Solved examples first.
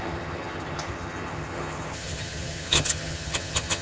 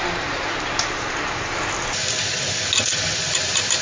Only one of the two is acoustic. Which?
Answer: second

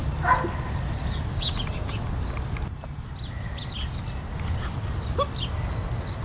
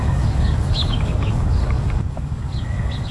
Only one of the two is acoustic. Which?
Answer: first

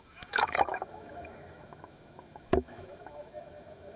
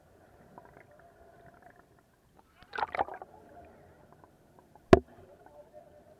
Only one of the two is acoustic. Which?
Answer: second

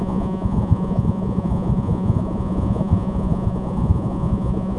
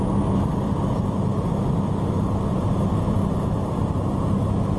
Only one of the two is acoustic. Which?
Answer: second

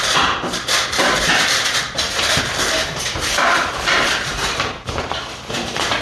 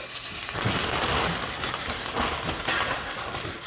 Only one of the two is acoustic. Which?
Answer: second